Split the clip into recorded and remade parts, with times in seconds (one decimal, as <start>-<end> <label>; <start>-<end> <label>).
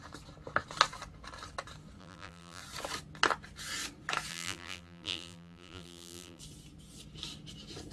0.0-2.0 recorded; 2.0-2.6 remade; 2.6-4.3 recorded; 4.3-6.4 remade; 6.4-7.9 recorded